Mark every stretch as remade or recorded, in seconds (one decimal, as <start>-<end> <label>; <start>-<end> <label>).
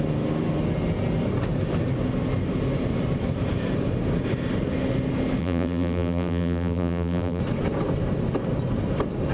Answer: 0.0-5.4 recorded; 5.4-7.4 remade; 7.4-9.3 recorded